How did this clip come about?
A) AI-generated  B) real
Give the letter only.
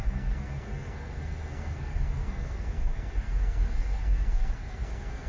A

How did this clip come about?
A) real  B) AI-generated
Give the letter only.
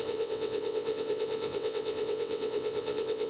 B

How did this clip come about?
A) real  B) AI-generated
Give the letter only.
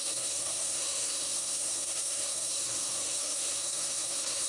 B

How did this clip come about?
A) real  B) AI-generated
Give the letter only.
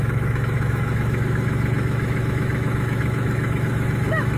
B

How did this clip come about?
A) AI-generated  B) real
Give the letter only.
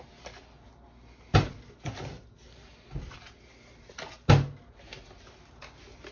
B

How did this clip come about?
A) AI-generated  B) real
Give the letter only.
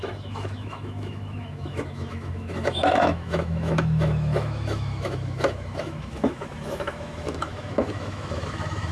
A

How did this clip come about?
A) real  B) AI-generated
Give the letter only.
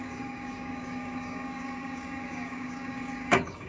B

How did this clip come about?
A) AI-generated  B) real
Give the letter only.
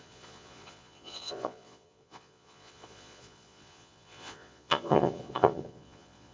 A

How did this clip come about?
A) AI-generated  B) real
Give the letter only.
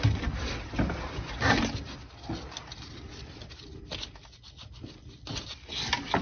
B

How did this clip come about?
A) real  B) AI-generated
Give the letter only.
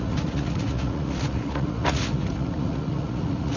B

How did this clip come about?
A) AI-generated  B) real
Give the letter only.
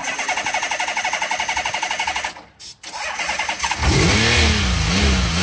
B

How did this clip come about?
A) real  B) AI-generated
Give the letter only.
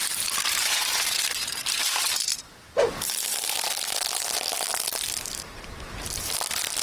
B